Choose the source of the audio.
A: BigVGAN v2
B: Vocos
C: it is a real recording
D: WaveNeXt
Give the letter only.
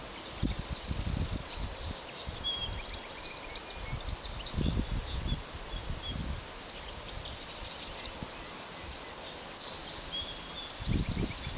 C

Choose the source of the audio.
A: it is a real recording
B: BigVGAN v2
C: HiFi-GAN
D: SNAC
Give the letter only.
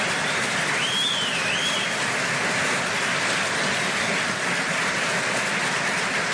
A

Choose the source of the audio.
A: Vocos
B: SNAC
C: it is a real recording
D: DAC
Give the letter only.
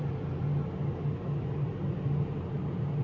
C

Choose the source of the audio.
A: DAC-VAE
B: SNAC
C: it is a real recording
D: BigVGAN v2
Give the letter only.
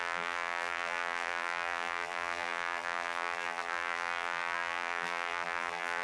D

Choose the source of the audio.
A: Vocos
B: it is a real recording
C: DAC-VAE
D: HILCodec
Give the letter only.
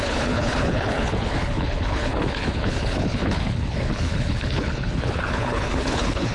D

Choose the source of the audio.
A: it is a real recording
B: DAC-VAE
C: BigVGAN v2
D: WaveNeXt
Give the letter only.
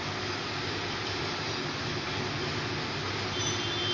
A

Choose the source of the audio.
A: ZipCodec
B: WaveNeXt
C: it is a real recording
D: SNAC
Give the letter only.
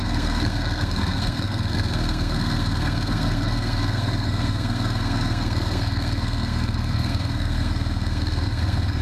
D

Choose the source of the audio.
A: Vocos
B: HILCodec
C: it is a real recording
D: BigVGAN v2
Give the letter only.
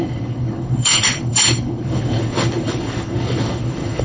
B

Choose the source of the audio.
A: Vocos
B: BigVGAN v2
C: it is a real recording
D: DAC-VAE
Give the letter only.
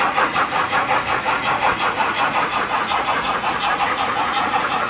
A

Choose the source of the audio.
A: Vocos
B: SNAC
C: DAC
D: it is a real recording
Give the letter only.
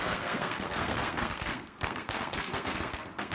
B